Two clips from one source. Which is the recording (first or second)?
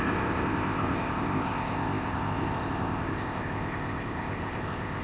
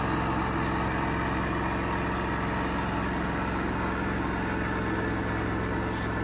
second